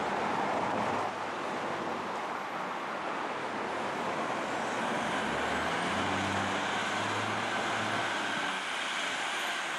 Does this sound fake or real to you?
real